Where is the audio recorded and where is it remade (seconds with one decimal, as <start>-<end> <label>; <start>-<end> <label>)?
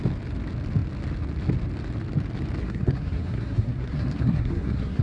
0.0-2.6 recorded; 2.6-5.0 remade